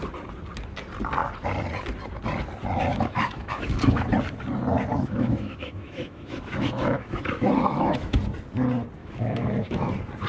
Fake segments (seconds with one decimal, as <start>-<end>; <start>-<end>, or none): 2.9-4.1; 4.9-8.2; 9.0-9.9

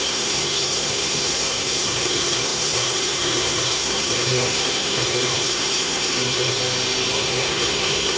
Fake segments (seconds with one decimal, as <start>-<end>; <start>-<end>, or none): 0.0-6.6; 7.1-8.2

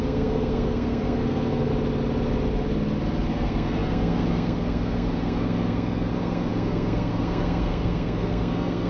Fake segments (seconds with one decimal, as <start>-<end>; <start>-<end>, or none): 0.0-1.7; 3.3-8.9

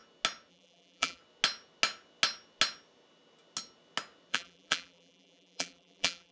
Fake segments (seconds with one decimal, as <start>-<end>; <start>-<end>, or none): 0.5-1.2; 4.3-6.3

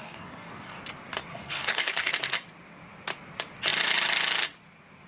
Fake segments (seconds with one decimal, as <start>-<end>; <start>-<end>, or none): 0.0-0.8; 1.3-2.1

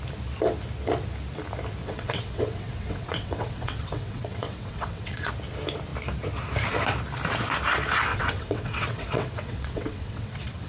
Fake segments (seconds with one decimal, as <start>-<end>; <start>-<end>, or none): 1.8-5.3; 8.1-10.7

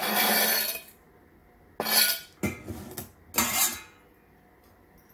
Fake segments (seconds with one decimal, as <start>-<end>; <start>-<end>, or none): 0.0-0.8

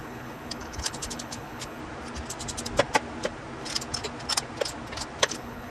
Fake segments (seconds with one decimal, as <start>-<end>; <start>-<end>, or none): 0.0-1.8; 5.2-5.7